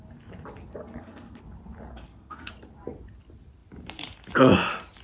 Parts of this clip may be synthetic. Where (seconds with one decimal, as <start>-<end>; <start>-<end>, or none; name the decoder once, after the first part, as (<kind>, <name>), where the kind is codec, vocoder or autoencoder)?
0.8-1.4 (codec, SNAC); 1.9-2.5